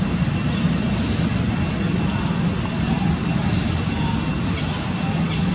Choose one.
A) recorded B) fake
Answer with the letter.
A